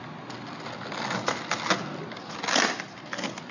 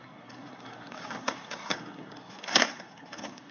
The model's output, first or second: second